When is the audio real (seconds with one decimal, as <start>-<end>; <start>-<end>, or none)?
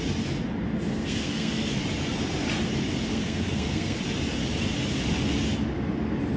0.0-0.9; 1.8-3.1; 4.0-6.4